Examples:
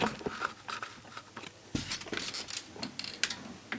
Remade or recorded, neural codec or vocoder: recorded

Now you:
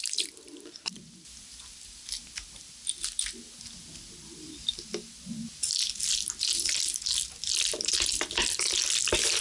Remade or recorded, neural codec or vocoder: recorded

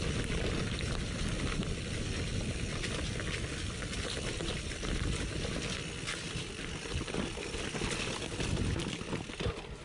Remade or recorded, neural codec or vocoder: recorded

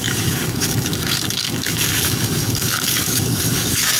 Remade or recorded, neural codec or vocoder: remade, codec, DAC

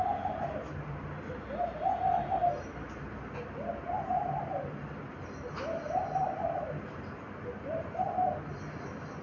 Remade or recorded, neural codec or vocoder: recorded